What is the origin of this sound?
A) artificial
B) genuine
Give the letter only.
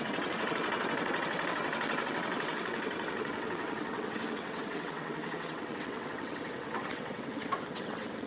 A